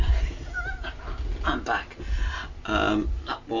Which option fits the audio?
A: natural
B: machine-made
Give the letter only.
A